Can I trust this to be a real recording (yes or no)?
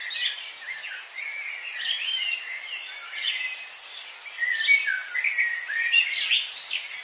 yes